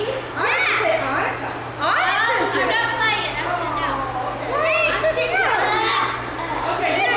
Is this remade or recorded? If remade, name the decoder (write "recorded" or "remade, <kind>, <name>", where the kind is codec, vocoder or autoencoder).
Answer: recorded